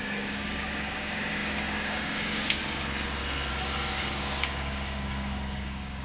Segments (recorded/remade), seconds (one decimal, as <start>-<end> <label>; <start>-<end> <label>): 0.0-2.6 remade; 2.6-3.5 recorded; 3.5-6.0 remade